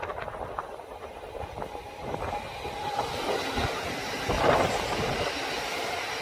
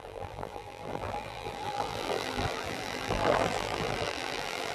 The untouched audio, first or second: first